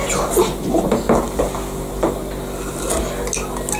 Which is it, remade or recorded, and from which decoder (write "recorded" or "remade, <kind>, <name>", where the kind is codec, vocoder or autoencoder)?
recorded